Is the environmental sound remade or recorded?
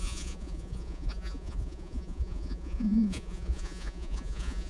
remade